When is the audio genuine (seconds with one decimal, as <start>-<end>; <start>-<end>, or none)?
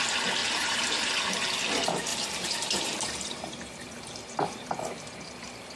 0.0-0.4; 1.1-2.1